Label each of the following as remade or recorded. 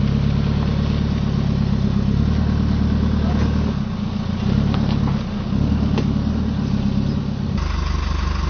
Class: recorded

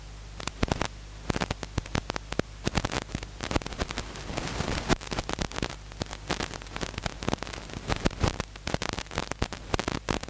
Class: recorded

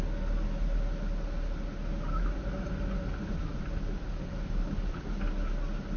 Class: recorded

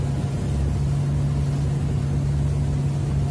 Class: recorded